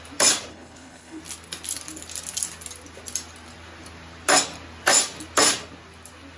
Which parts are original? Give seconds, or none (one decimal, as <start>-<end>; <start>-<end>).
0.0-0.5; 1.2-6.4